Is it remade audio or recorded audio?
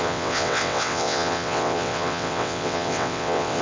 remade